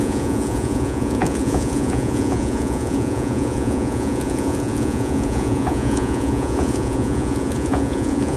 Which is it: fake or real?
fake